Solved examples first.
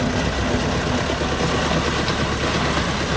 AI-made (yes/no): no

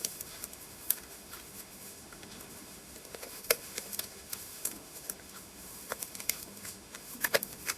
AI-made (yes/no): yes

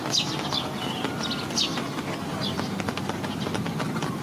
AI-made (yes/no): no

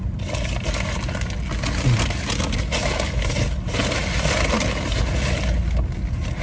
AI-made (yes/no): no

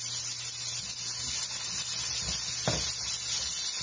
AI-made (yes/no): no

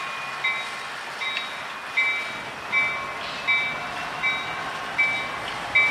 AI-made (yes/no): no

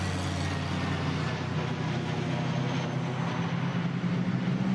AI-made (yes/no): no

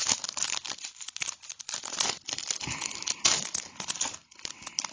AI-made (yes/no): no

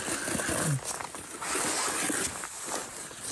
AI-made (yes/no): no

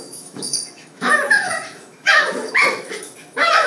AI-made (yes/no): yes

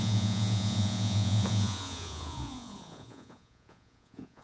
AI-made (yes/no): yes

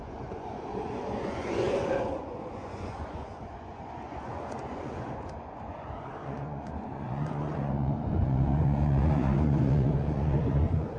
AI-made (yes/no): yes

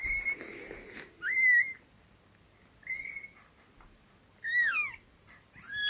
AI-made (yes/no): no